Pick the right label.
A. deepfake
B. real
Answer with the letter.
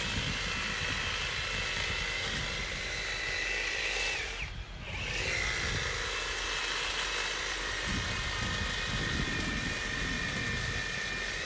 B